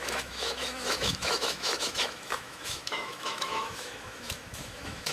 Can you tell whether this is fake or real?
fake